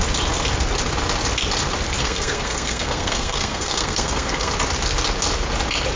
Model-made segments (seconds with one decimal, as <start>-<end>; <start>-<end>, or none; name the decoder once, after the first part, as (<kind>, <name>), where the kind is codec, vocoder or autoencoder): 2.0-4.5 (codec, SNAC)